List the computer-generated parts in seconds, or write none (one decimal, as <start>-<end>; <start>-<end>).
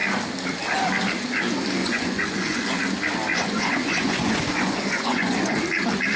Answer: 1.8-2.9; 3.3-5.6